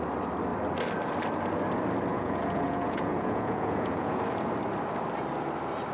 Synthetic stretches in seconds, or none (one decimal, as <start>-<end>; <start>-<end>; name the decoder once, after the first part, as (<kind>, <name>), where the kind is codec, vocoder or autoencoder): 2.1-4.2 (vocoder, Vocos)